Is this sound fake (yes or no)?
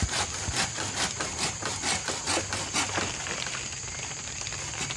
no